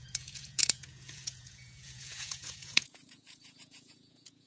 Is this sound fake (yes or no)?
yes